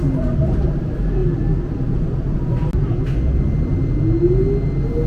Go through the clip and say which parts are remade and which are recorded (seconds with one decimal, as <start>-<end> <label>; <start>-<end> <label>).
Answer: 0.0-5.1 recorded